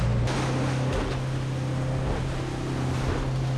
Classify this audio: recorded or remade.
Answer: recorded